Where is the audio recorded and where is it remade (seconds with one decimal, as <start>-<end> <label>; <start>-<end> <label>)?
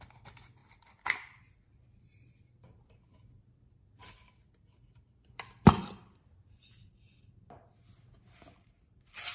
0.0-5.2 recorded; 5.2-5.8 remade; 5.8-9.3 recorded